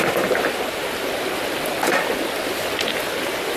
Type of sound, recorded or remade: recorded